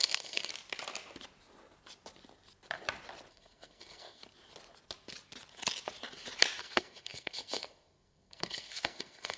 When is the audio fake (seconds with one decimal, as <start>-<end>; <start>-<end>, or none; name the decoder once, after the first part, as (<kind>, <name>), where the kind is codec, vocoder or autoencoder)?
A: 0.0-0.5 (codec, SNAC); 3.3-4.2; 6.6-9.4